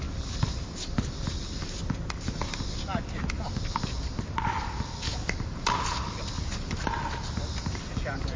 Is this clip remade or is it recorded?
recorded